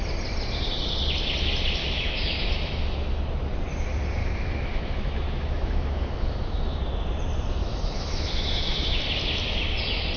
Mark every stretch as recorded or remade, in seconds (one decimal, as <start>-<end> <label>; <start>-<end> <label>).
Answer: 0.0-1.8 recorded; 1.8-3.2 remade; 3.2-4.2 recorded; 4.2-6.8 remade; 6.8-7.6 recorded; 7.6-9.0 remade; 9.0-10.2 recorded